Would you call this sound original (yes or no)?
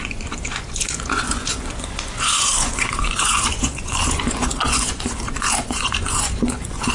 no